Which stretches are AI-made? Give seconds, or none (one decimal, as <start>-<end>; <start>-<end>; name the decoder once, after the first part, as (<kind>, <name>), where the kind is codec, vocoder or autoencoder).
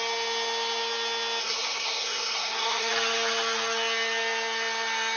1.4-2.9 (codec, SNAC)